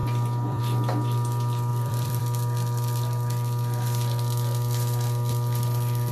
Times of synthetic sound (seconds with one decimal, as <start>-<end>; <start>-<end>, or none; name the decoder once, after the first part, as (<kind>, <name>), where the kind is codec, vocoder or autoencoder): 0.0-0.6 (vocoder, BigVGAN v2); 1.7-2.2